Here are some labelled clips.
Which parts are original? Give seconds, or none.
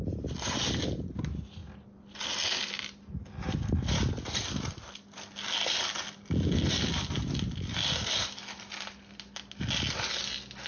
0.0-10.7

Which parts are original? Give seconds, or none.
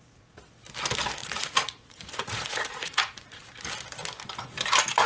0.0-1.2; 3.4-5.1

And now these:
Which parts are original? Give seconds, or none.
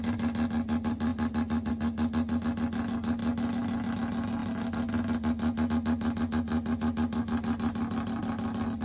0.0-8.8